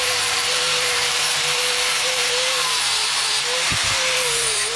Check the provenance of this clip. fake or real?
fake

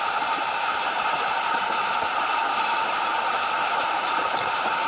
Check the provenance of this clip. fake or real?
fake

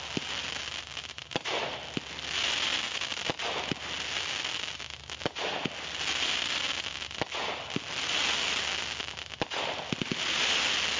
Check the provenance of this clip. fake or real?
real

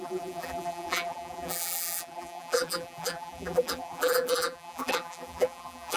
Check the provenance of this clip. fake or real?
fake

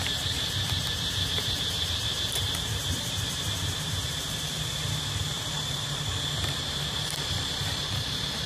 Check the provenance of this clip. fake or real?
fake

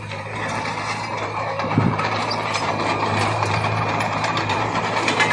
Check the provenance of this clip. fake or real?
fake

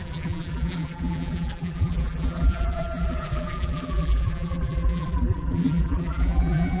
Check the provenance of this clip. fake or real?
fake